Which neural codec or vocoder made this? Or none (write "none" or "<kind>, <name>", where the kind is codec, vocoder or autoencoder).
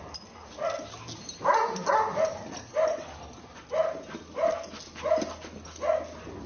none